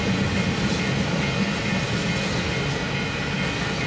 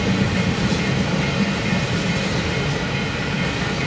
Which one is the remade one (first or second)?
second